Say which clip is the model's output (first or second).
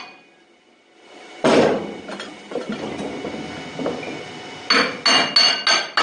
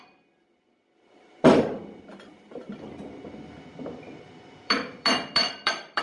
second